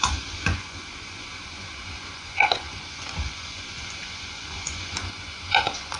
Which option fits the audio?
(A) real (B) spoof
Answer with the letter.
B